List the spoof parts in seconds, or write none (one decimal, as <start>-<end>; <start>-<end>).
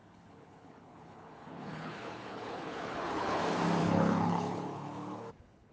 0.0-3.4; 3.8-5.7